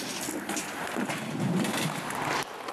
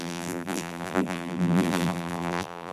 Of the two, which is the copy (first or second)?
second